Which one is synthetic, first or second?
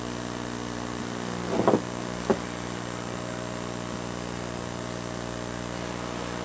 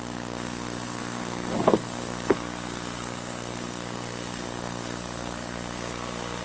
second